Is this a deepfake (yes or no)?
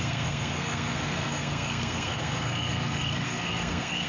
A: yes